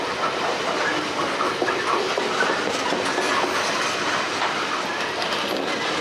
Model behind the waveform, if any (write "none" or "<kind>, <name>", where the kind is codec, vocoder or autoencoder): none